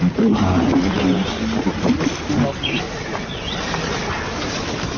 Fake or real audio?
real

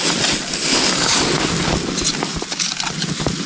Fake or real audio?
real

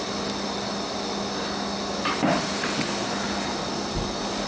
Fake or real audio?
real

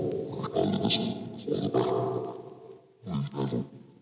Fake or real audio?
real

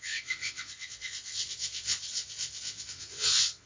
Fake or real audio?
fake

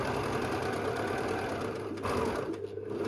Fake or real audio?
real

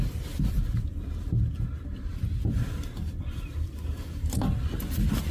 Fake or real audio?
real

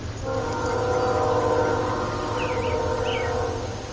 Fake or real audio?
real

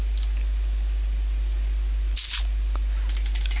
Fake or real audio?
real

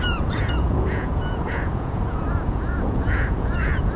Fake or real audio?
fake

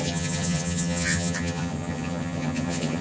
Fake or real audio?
fake